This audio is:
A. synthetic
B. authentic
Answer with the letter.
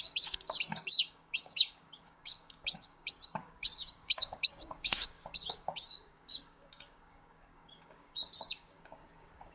A